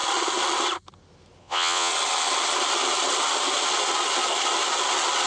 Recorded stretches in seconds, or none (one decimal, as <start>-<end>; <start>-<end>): 0.0-1.4; 1.9-5.3